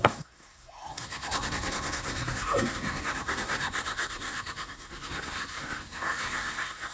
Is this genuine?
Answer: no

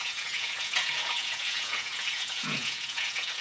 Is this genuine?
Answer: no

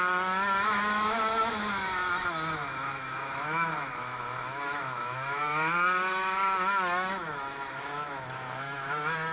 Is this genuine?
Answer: no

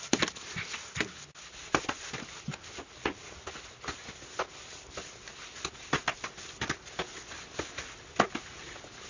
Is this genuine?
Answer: yes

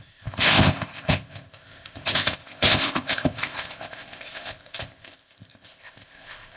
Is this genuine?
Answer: no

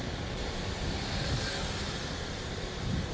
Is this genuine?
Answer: yes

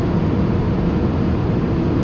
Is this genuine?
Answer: yes